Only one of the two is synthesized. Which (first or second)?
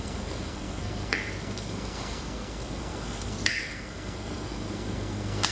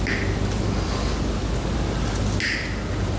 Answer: first